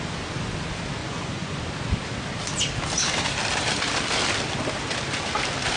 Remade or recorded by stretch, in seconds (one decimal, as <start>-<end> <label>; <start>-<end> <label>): 0.0-1.0 recorded; 1.0-1.6 remade; 1.6-5.8 recorded